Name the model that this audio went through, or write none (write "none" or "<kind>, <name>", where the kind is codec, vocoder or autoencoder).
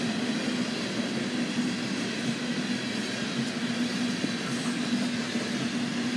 none